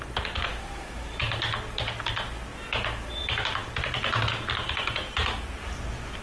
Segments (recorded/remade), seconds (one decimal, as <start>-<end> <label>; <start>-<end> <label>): 0.0-0.5 recorded; 0.5-1.2 remade; 1.2-6.2 recorded